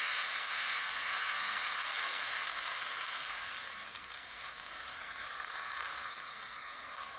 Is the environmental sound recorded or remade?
remade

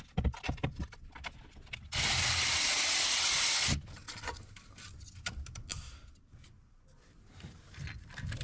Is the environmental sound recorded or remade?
recorded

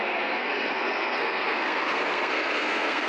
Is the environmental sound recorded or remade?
remade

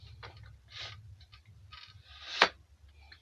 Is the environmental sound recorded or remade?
recorded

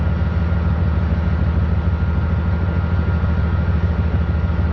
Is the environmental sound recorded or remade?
recorded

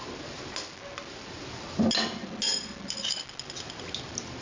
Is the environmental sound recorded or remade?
recorded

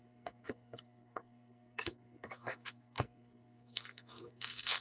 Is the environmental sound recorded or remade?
remade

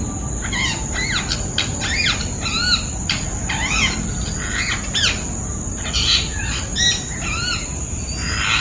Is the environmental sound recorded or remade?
recorded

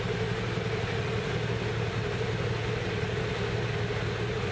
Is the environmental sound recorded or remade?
recorded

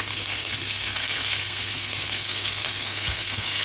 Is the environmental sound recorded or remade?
remade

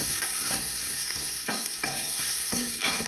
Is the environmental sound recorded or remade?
remade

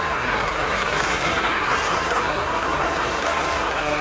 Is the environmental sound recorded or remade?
remade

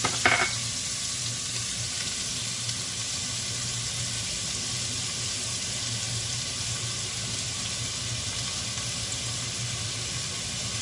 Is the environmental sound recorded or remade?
recorded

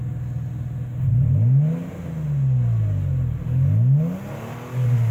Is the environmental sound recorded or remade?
recorded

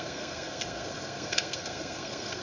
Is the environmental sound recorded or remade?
remade